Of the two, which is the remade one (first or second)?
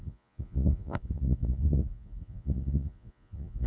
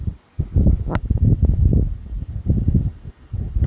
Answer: first